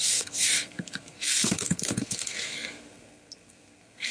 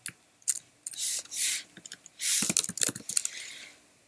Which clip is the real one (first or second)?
second